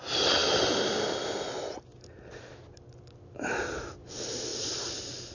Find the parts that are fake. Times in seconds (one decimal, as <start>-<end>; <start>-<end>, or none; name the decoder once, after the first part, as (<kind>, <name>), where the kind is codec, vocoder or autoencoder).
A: none

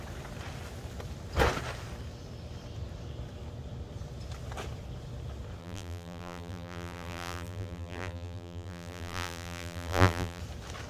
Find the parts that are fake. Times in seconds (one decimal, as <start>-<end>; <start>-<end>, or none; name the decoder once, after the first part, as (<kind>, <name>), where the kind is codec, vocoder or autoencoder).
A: 5.6-10.4 (vocoder, BigVGAN v2)

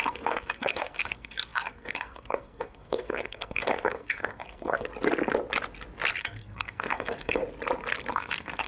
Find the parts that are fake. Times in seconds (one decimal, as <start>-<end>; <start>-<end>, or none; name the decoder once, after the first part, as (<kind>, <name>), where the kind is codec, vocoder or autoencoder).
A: 0.0-4.9 (codec, SNAC); 6.2-7.4; 8.1-8.7

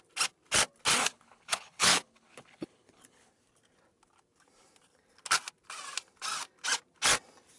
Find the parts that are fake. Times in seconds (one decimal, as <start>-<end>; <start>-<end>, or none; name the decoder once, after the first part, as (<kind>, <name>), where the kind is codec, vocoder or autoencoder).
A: 1.0-3.3 (codec, HILCodec)

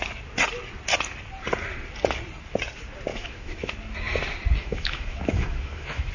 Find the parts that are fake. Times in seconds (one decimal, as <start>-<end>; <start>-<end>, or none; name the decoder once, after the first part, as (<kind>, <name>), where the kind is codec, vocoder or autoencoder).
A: 3.1-3.7 (autoencoder, DAC-VAE); 4.6-6.1

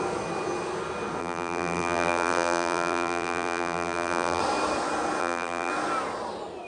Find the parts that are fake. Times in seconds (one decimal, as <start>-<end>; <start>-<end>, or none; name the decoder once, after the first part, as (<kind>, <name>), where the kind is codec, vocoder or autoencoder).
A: 1.2-4.4 (vocoder, BigVGAN v2); 5.2-5.7

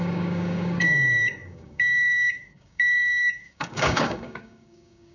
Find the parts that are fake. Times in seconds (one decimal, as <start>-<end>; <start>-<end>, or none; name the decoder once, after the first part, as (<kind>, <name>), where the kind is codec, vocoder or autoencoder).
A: 0.0-5.1 (codec, DAC)